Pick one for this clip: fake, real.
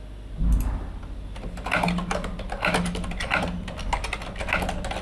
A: real